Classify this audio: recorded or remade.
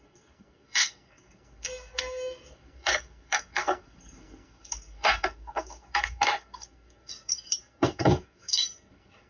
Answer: remade